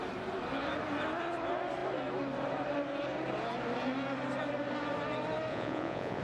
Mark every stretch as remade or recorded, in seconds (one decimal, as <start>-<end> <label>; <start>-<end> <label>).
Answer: 0.0-5.5 recorded; 5.5-6.2 remade